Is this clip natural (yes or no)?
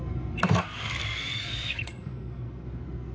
no